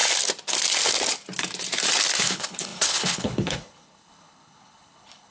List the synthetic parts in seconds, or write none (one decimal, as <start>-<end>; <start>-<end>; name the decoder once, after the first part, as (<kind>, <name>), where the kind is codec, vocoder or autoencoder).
2.2-5.3 (codec, HILCodec)